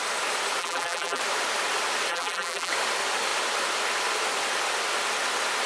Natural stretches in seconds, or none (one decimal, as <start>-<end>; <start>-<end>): 0.0-0.6; 1.2-2.1; 2.7-5.7